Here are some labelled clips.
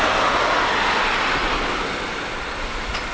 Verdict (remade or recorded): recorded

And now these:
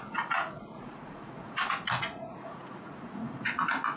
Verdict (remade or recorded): remade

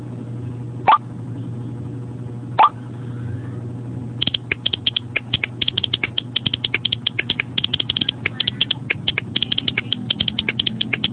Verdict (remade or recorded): recorded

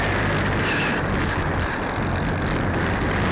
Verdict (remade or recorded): recorded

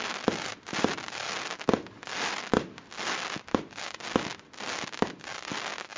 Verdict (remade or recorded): recorded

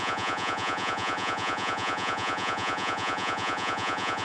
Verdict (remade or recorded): remade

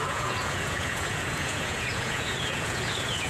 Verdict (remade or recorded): remade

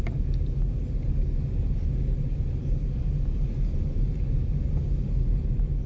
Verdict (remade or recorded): recorded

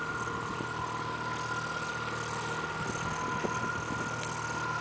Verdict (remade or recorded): recorded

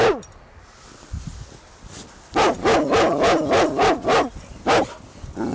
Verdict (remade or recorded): recorded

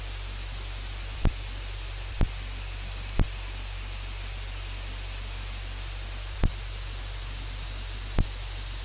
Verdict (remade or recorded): recorded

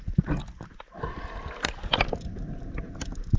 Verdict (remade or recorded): recorded